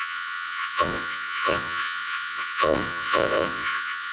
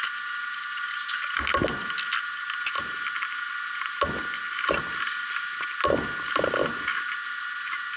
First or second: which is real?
second